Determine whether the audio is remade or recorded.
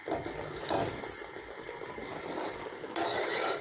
recorded